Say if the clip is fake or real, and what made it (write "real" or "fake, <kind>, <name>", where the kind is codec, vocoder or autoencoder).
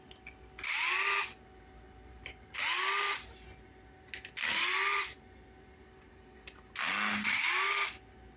real